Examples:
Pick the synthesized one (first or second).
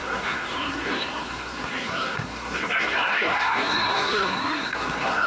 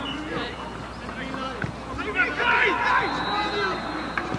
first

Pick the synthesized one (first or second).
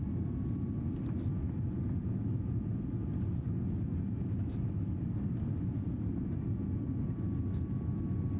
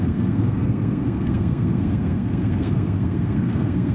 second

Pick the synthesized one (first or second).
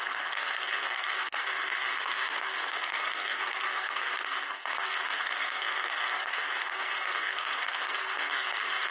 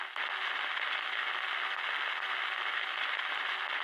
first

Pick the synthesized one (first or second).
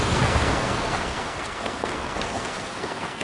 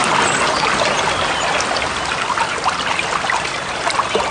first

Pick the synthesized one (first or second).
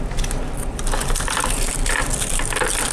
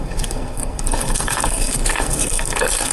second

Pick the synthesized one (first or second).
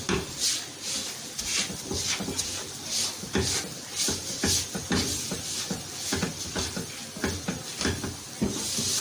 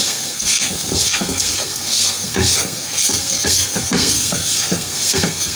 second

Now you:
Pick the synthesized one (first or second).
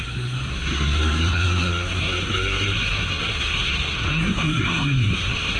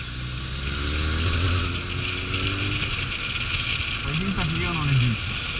first